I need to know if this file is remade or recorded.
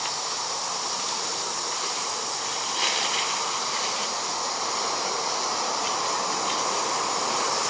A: recorded